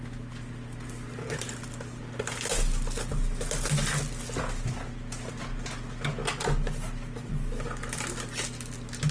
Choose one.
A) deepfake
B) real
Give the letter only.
B